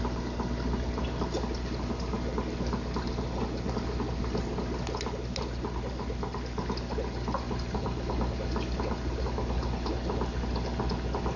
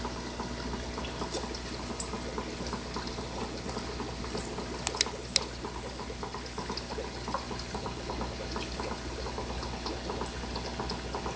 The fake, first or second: first